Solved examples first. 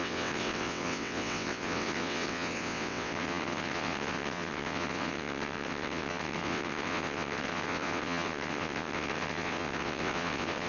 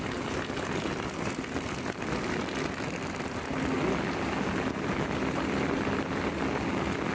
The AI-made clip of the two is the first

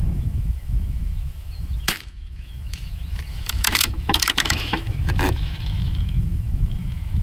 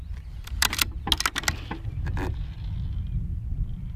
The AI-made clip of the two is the first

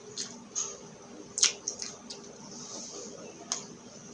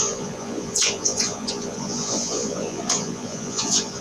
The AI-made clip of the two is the second